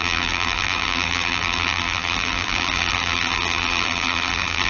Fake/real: fake